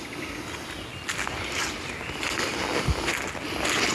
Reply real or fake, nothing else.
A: real